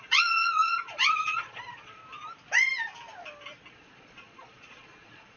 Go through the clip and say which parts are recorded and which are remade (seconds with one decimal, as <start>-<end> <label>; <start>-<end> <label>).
0.0-2.0 remade; 2.0-3.7 recorded; 3.7-5.4 remade

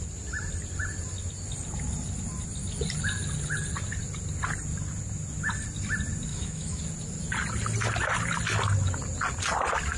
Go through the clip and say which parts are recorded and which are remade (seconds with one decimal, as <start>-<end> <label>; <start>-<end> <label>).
0.0-6.3 recorded; 6.3-6.8 remade; 6.8-10.0 recorded

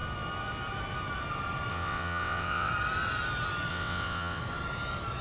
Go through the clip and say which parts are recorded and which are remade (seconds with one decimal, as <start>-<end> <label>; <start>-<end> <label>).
0.0-1.7 recorded; 1.7-2.7 remade; 2.7-3.7 recorded; 3.7-4.4 remade; 4.4-5.2 recorded